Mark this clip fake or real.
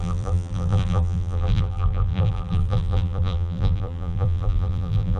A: fake